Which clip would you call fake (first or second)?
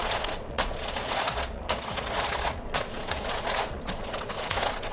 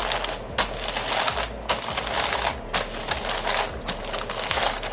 first